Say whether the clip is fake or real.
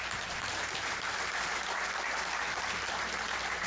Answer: fake